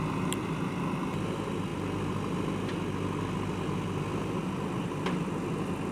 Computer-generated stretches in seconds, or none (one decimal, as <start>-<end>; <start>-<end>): none